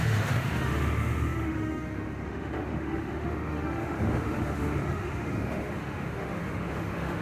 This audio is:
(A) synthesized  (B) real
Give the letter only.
A